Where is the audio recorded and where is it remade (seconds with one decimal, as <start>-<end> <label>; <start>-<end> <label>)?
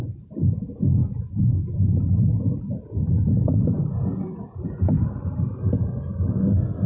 0.0-1.0 recorded; 1.0-5.1 remade; 5.1-6.9 recorded